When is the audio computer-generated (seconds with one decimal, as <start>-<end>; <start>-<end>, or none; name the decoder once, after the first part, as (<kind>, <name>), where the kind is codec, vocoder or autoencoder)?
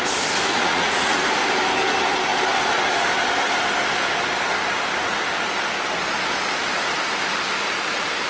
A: 0.5-1.2 (vocoder, Vocos)